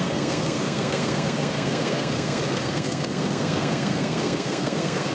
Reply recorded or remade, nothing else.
remade